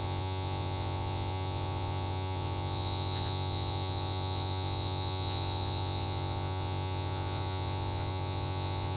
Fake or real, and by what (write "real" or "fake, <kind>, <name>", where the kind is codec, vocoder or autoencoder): fake, vocoder, Vocos